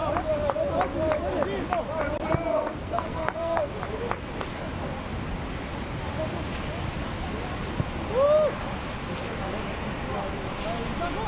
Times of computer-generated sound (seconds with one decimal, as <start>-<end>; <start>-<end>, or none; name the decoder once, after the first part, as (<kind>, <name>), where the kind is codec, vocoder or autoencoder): 2.5-3.7 (codec, SNAC)